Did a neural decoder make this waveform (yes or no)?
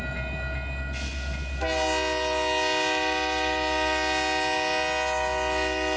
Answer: no